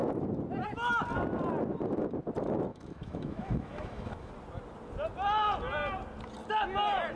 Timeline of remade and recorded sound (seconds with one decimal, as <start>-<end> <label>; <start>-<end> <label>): 0.0-2.7 recorded; 2.7-4.3 remade; 4.3-7.2 recorded

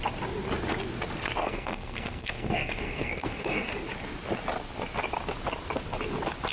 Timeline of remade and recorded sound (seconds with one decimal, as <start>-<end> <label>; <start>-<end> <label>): 0.0-1.4 recorded; 1.4-3.7 remade; 3.7-6.5 recorded

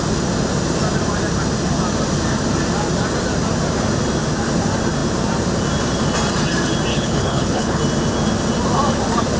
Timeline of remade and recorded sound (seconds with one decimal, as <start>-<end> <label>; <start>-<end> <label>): 0.0-6.9 recorded; 6.9-7.8 remade; 7.8-9.4 recorded

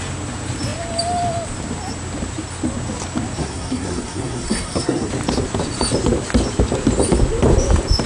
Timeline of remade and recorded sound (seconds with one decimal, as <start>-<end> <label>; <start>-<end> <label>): 0.0-3.4 recorded; 3.4-5.1 remade; 5.1-8.1 recorded